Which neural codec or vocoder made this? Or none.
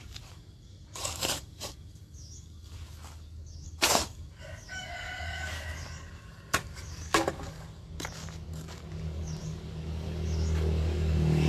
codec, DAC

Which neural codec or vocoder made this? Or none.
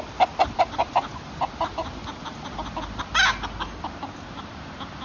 none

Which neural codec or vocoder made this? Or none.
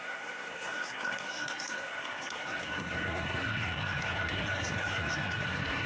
codec, SNAC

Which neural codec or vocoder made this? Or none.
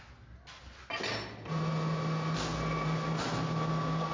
none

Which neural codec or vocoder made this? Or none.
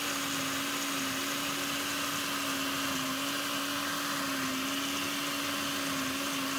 none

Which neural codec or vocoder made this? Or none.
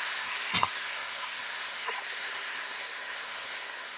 codec, SNAC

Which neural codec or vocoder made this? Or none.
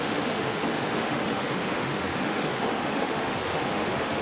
autoencoder, DAC-VAE